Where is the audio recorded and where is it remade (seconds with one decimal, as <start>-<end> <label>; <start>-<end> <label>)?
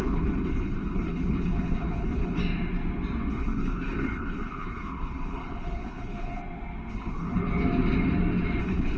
0.0-2.4 remade; 2.4-3.3 recorded; 3.3-6.4 remade; 6.4-6.9 recorded; 6.9-7.4 remade; 7.4-8.6 recorded; 8.6-9.0 remade